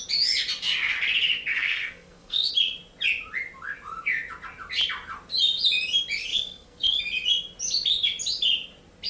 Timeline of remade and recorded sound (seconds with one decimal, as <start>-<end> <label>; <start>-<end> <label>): 0.0-1.5 recorded; 1.5-2.5 remade; 2.5-6.3 recorded; 6.3-7.0 remade; 7.0-9.1 recorded